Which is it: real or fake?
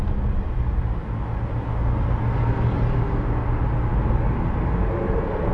real